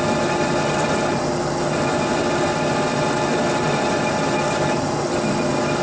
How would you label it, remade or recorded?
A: recorded